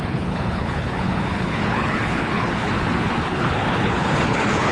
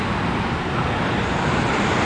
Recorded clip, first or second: second